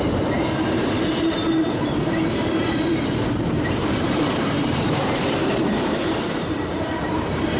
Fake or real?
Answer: fake